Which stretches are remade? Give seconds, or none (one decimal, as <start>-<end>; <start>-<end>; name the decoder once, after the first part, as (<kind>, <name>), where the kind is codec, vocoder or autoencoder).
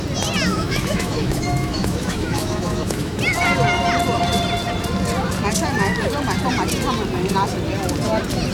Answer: 0.5-3.2 (autoencoder, DAC-VAE)